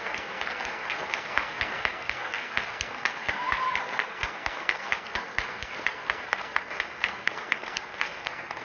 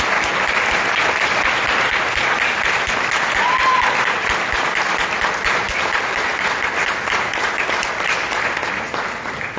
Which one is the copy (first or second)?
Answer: first